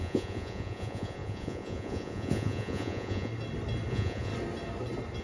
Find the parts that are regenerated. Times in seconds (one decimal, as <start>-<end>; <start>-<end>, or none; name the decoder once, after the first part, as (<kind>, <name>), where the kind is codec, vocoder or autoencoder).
0.0-3.3 (vocoder, Vocos); 3.9-4.3